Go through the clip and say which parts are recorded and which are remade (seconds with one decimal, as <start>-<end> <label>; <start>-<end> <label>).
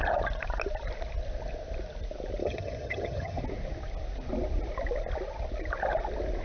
0.0-2.4 recorded; 2.4-3.4 remade; 3.4-6.4 recorded